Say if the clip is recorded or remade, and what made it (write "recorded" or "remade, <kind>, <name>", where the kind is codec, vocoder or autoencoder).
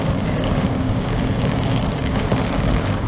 remade, codec, DAC